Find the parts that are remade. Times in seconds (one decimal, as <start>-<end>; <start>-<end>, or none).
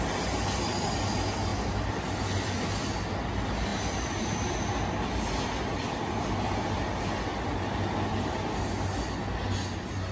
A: none